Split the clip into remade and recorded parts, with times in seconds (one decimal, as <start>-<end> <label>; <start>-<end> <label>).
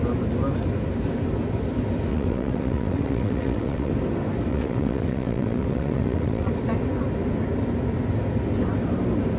0.0-2.1 recorded; 2.1-3.9 remade; 3.9-4.5 recorded; 4.5-6.5 remade; 6.5-9.4 recorded